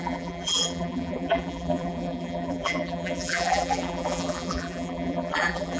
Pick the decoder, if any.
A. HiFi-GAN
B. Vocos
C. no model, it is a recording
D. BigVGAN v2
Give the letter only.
D